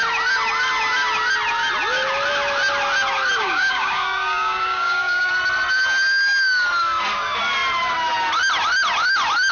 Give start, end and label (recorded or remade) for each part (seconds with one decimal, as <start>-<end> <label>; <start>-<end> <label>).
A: 0.0-3.4 recorded; 3.4-5.3 remade; 5.3-9.5 recorded